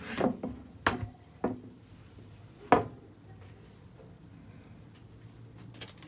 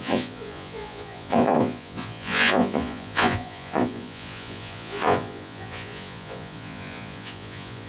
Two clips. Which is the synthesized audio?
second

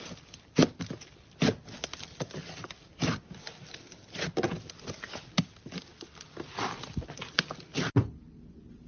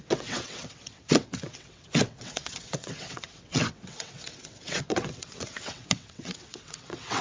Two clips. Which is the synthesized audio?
second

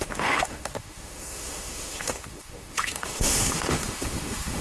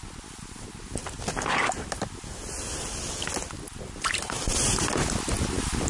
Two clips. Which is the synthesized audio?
first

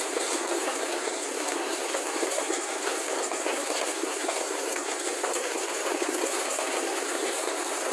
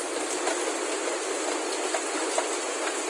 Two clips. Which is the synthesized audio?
first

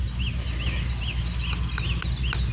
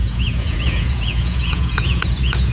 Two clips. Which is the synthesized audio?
second